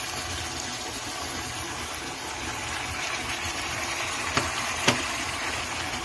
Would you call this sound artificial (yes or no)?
no